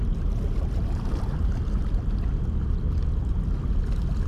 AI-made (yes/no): no